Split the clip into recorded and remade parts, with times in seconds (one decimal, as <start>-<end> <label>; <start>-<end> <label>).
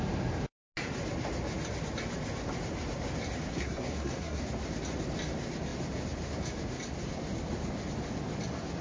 0.0-3.5 recorded; 3.5-4.4 remade; 4.4-8.8 recorded